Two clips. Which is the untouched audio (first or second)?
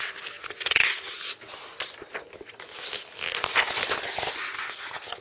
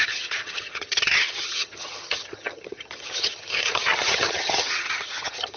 first